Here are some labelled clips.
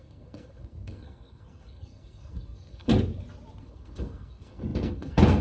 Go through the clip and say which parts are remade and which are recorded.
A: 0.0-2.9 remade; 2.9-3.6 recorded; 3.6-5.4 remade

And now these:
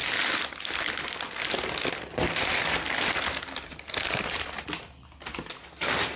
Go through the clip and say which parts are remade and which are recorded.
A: 0.0-6.2 recorded

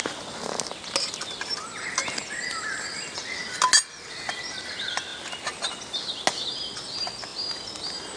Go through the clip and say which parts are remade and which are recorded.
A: 0.0-8.2 recorded

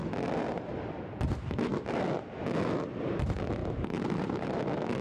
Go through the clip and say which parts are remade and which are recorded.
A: 0.0-3.6 recorded; 3.6-4.6 remade; 4.6-5.0 recorded

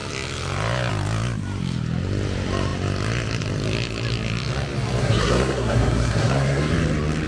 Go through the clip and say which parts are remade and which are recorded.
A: 0.0-5.0 recorded; 5.0-6.7 remade; 6.7-7.3 recorded